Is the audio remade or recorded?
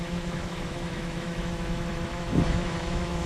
remade